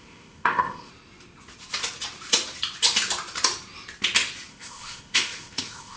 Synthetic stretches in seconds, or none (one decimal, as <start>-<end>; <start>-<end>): 0.0-0.9; 4.5-6.0